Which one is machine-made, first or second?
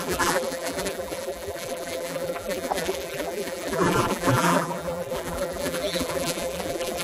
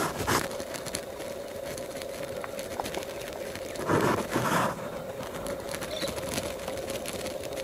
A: first